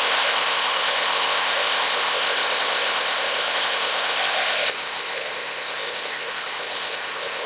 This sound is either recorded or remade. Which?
remade